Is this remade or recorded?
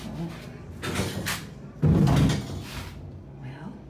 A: recorded